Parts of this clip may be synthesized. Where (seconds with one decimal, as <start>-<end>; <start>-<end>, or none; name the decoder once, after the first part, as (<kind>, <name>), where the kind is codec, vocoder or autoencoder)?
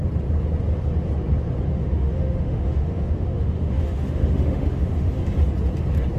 1.7-5.2 (autoencoder, DAC-VAE)